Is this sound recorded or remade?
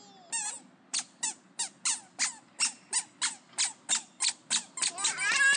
recorded